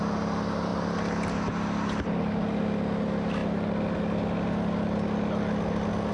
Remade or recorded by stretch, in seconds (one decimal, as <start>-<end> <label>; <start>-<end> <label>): 0.0-6.1 recorded

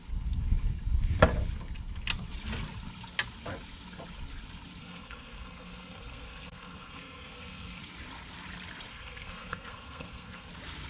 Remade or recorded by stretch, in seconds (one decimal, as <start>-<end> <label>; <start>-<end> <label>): 0.0-4.8 recorded; 4.8-7.8 remade; 7.8-8.9 recorded; 8.9-10.5 remade; 10.5-10.9 recorded

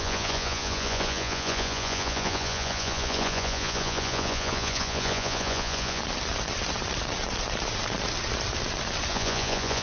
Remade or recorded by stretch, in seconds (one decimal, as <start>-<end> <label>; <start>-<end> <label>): 0.0-6.0 remade; 6.0-9.1 recorded; 9.1-9.8 remade

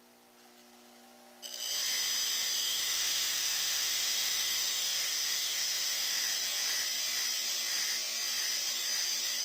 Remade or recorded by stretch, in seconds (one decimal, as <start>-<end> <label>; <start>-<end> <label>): 0.0-2.6 recorded; 2.6-6.4 remade; 6.4-9.4 recorded